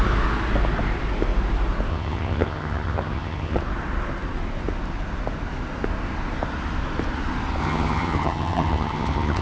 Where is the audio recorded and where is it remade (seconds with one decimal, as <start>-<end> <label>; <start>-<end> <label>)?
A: 0.0-1.9 recorded; 1.9-3.6 remade; 3.6-7.6 recorded; 7.6-9.4 remade